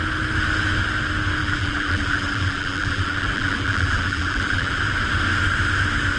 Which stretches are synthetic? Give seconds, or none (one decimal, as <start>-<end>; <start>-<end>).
1.4-4.8